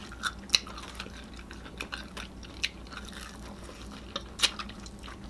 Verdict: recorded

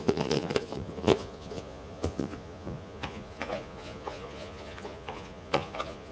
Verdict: remade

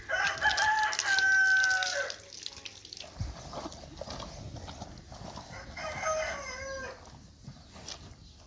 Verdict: recorded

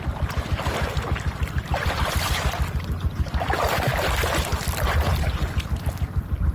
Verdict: recorded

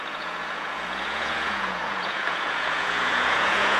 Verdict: remade